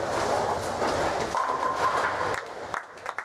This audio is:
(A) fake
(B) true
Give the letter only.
B